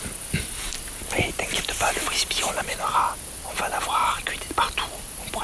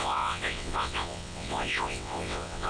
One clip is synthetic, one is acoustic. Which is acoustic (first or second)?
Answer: first